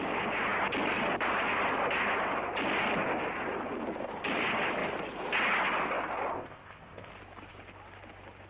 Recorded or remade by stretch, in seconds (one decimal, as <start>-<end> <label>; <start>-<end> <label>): 0.0-6.3 recorded; 6.3-7.1 remade; 7.1-8.5 recorded